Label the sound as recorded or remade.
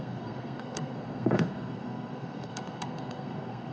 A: remade